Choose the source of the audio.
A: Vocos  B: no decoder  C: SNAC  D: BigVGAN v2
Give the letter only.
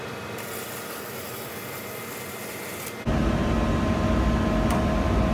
B